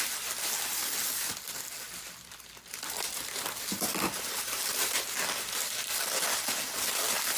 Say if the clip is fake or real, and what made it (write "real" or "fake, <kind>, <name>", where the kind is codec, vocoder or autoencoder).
real